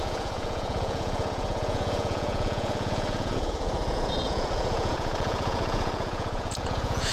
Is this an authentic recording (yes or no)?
no